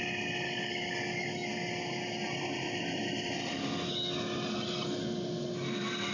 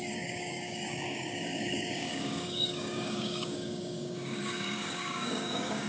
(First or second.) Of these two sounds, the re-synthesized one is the second